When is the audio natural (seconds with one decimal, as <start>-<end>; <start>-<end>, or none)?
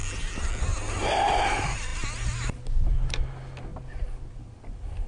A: 0.0-5.1